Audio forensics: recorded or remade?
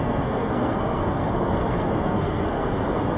remade